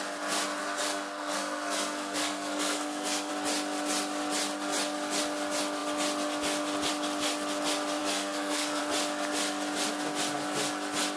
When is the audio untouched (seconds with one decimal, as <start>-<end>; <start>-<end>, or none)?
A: 0.0-0.6; 3.3-8.0; 8.8-11.2